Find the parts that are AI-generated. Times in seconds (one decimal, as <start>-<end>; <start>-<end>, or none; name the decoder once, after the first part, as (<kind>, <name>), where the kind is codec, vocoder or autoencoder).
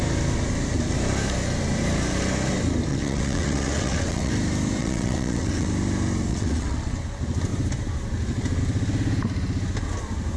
2.9-4.3 (vocoder, WaveNeXt); 4.8-5.7; 6.3-7.0